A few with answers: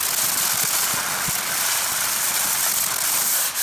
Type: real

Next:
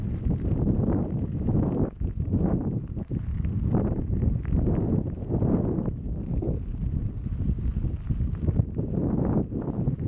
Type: real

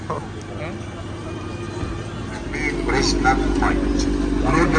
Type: real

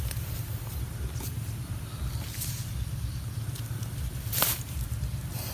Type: real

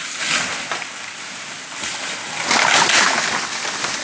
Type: real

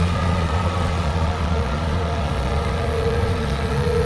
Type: fake